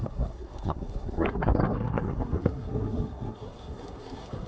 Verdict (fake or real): fake